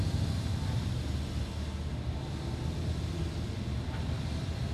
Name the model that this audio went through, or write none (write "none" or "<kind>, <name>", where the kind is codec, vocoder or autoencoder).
none